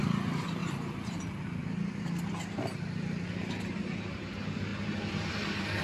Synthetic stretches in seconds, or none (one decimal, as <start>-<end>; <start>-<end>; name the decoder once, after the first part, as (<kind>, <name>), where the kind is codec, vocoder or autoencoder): 0.0-0.6 (vocoder, BigVGAN v2); 1.2-1.6; 3.9-5.8